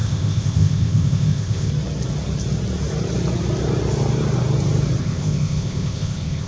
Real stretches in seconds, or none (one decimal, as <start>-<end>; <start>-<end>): 1.7-5.0

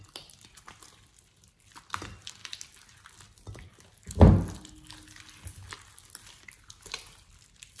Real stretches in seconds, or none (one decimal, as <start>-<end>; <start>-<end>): 0.0-7.8

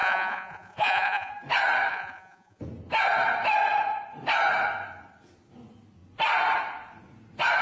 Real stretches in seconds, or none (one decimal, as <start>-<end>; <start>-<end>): 1.3-1.9; 2.6-7.6

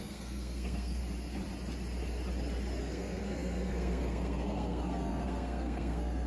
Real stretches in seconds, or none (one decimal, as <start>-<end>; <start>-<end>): 1.0-2.8

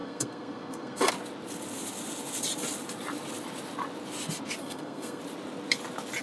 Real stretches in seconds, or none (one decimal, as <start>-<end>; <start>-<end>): 1.1-4.6; 5.2-6.2

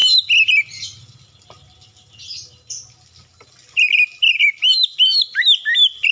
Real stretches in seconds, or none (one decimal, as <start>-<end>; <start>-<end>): 0.0-6.1

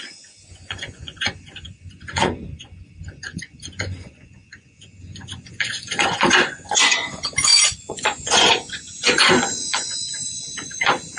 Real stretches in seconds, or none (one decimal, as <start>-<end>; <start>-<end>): none